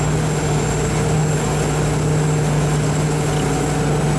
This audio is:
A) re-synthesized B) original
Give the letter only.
B